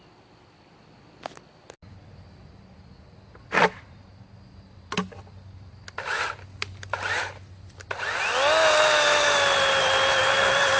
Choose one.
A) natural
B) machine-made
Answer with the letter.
A